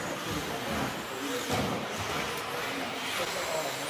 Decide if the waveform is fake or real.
real